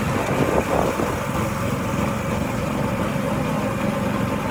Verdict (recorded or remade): recorded